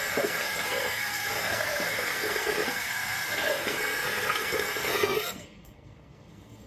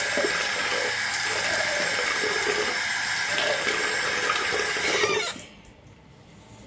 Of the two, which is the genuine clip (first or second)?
second